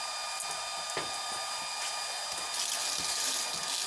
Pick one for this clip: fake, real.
real